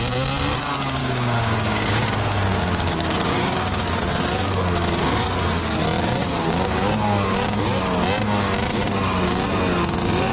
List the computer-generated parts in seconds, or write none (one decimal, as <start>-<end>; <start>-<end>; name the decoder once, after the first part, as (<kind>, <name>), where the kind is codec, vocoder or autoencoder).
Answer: 1.0-3.8 (codec, DAC); 4.4-5.0; 6.2-7.6